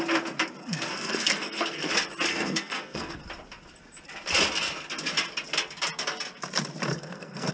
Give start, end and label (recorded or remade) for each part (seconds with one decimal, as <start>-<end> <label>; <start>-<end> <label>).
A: 0.0-0.6 recorded; 0.6-1.9 remade; 1.9-2.3 recorded; 2.3-3.2 remade; 3.2-6.9 recorded; 6.9-7.5 remade